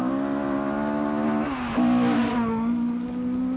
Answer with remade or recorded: recorded